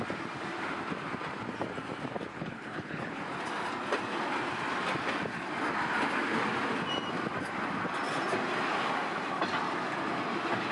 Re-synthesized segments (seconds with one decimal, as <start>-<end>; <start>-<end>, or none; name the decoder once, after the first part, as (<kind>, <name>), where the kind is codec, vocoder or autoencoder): 2.3-3.2 (codec, HILCodec)